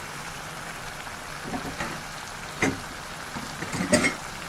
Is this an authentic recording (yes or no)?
yes